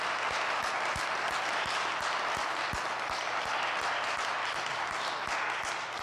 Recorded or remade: recorded